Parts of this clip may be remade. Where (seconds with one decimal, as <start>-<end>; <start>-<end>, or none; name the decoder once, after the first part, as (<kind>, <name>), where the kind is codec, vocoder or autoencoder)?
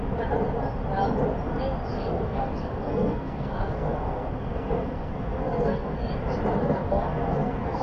1.9-6.1 (codec, SNAC); 6.6-7.8